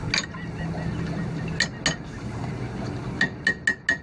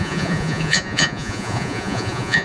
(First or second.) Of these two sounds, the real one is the first